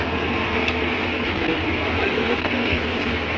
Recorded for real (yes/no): no